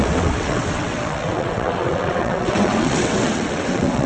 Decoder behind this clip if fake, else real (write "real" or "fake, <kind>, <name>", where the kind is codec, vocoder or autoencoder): fake, vocoder, WaveNeXt